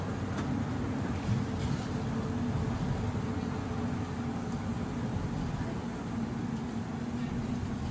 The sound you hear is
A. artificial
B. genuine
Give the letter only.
B